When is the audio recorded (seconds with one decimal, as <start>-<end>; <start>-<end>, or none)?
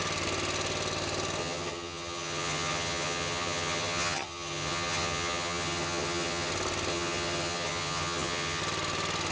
0.0-1.4; 6.5-6.9; 8.6-9.3